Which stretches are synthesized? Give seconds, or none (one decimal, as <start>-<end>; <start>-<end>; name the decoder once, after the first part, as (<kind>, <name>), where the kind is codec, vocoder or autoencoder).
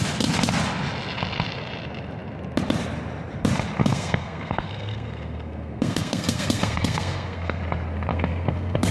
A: 3.8-7.6 (codec, SNAC); 8.1-8.9